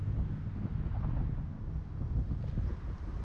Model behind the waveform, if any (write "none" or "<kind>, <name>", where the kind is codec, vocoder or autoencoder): none